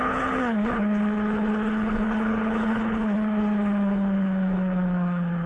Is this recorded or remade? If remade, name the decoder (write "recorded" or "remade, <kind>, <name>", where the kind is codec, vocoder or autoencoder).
remade, codec, HILCodec